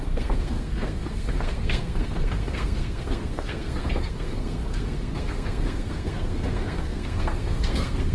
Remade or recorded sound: remade